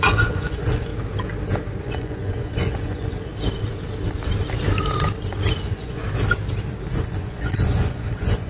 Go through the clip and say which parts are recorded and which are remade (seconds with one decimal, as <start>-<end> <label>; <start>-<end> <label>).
0.0-0.9 remade; 0.9-1.8 recorded; 1.8-3.3 remade; 3.3-5.6 recorded; 5.6-6.0 remade; 6.0-6.9 recorded; 6.9-8.5 remade